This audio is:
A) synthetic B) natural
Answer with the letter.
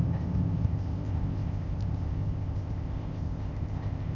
A